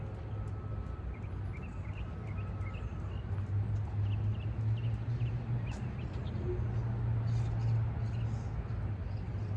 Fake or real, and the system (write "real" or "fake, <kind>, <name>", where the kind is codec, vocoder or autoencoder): real